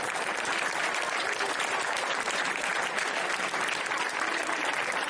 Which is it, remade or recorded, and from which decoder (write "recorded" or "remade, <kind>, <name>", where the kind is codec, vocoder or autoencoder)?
recorded